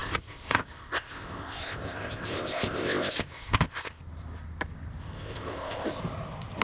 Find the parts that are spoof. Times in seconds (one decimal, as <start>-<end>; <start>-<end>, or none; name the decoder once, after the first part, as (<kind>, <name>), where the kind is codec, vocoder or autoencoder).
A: 0.0-4.0 (codec, ZipCodec); 5.0-6.0